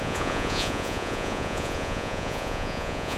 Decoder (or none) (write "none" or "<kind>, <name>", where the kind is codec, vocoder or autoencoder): vocoder, Vocos